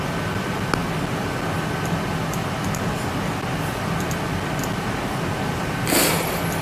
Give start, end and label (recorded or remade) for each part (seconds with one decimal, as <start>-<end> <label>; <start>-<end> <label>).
0.0-6.6 recorded